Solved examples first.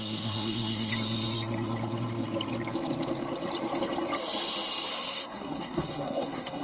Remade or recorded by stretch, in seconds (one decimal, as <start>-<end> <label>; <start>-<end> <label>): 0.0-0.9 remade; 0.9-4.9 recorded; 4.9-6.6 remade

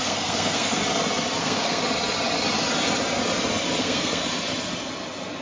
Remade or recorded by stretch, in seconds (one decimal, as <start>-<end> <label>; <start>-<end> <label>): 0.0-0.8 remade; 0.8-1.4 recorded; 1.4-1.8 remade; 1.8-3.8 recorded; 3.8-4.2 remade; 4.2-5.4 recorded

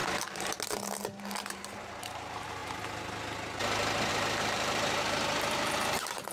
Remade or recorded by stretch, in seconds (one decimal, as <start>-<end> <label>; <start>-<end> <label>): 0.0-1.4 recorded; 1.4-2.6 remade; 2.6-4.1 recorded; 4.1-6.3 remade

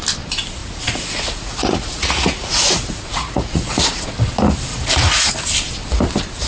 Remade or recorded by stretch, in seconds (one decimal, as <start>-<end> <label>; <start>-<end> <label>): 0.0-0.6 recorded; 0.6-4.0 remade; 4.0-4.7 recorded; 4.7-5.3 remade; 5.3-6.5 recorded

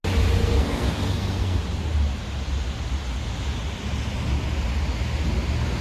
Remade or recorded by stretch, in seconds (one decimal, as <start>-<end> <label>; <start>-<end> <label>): 0.0-0.4 recorded; 0.4-1.6 remade; 1.6-5.8 recorded